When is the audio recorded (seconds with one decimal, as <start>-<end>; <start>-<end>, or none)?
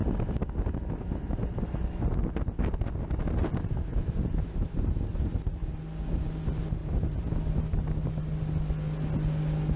0.0-3.9; 5.8-6.8; 7.3-9.8